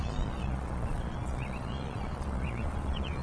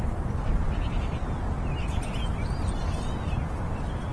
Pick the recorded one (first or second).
second